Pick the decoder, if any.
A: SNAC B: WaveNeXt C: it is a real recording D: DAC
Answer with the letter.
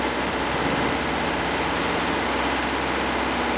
C